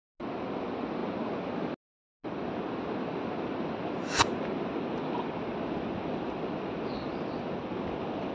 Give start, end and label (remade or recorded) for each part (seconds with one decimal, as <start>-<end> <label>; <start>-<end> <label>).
0.0-8.3 recorded